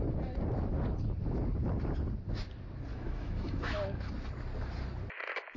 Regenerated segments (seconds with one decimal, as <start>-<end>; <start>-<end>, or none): 2.9-4.1